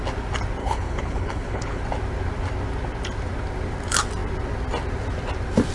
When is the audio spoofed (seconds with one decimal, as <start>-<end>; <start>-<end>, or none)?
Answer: 0.6-1.8